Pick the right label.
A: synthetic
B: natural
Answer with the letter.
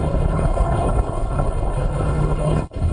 A